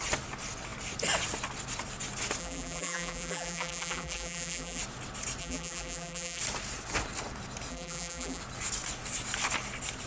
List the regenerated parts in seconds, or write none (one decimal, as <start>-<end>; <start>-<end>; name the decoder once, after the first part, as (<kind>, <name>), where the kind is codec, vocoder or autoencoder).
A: 2.4-4.8 (vocoder, BigVGAN v2); 5.4-6.4; 7.7-8.4